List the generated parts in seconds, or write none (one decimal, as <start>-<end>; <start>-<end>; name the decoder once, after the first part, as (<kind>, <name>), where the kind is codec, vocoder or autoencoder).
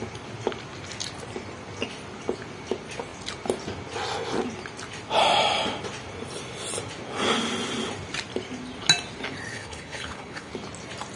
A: 9.5-10.5 (codec, HILCodec)